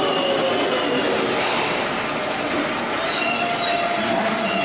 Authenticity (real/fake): real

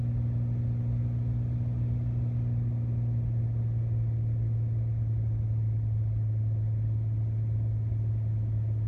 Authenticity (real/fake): real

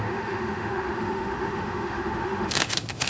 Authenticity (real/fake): fake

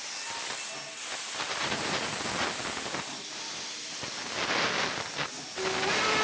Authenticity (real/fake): real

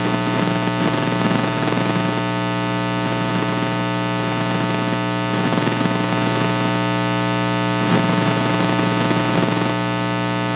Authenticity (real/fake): real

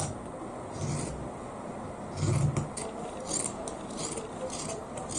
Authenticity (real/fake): real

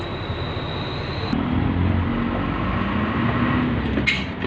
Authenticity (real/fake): real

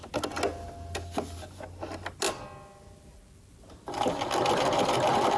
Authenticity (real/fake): real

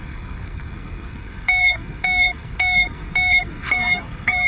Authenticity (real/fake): fake